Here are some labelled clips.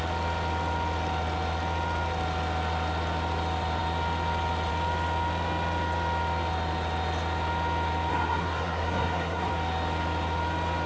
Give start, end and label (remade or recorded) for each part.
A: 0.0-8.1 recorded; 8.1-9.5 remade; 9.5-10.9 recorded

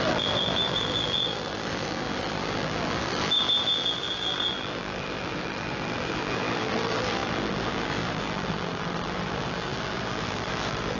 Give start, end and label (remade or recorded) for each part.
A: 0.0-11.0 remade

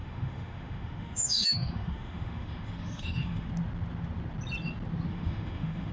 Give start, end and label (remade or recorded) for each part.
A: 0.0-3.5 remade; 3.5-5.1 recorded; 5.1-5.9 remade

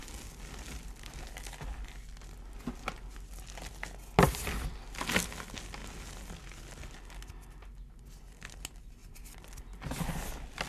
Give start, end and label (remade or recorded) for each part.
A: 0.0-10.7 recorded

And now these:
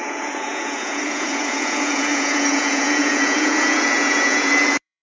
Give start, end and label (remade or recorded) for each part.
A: 0.0-5.0 remade

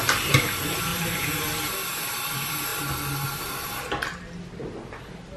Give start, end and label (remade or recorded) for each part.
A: 0.0-0.9 recorded; 0.9-1.4 remade; 1.4-5.4 recorded

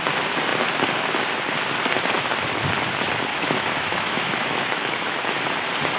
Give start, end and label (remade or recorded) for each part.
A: 0.0-3.3 recorded; 3.3-5.4 remade; 5.4-6.0 recorded